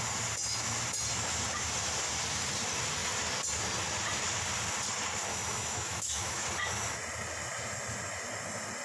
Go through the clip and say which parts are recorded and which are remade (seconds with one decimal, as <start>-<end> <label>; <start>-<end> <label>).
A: 0.0-5.3 recorded; 5.3-6.5 remade; 6.5-8.8 recorded